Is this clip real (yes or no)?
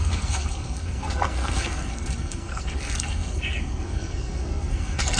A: no